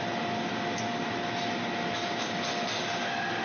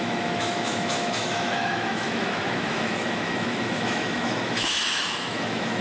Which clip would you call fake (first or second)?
second